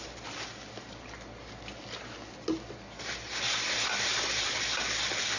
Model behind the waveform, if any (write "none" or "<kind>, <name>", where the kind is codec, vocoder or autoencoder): none